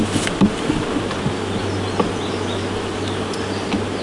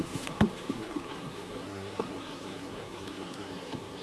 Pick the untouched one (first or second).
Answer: first